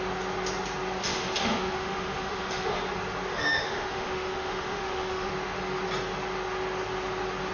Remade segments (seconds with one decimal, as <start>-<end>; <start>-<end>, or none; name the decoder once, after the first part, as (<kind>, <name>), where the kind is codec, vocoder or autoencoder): 1.0-2.8 (autoencoder, DAC-VAE); 3.3-5.3